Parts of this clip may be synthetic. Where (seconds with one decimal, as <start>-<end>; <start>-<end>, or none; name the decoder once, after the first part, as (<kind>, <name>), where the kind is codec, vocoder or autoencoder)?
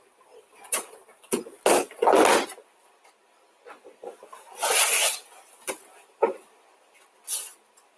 none